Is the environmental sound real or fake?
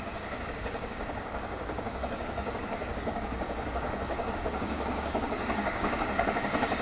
fake